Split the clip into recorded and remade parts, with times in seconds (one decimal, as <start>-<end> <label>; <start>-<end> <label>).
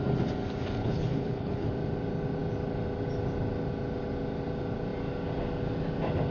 0.0-0.8 recorded; 0.8-1.7 remade; 1.7-6.3 recorded